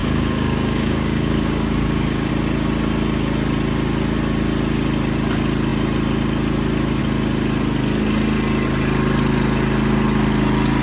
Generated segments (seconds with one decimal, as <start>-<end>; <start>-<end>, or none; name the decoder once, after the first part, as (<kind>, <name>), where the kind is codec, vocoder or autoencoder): 0.0-2.3 (codec, DAC)

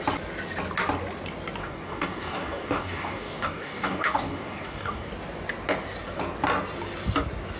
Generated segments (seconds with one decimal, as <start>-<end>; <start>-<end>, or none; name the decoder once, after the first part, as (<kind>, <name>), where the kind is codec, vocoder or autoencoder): 1.6-5.1 (codec, DAC)

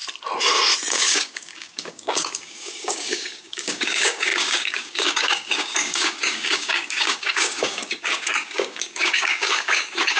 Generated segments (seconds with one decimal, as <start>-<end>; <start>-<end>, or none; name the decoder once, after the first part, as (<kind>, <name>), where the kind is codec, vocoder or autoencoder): 0.9-10.2 (codec, DAC)

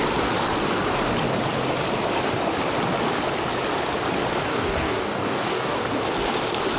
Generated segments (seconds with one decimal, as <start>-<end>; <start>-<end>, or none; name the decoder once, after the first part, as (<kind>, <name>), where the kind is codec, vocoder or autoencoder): 4.5-5.8 (codec, DAC)

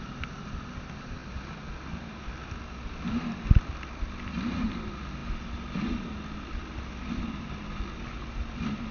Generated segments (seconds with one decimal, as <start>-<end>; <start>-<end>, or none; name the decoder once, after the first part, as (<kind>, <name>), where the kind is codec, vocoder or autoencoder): none

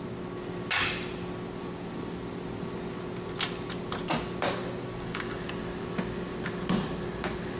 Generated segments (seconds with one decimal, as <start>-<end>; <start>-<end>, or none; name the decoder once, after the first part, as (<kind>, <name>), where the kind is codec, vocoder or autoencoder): 4.9-5.5 (codec, DAC)

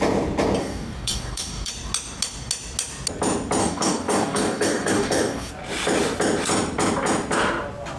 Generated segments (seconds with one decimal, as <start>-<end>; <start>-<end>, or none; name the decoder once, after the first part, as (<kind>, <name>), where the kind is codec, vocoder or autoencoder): 0.6-1.7 (codec, DAC); 3.6-5.5